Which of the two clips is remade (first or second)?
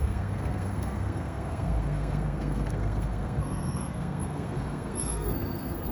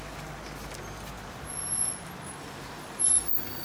first